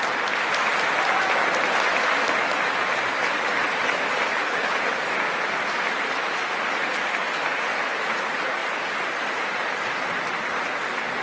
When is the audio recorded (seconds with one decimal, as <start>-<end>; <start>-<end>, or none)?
0.0-4.3; 4.8-11.2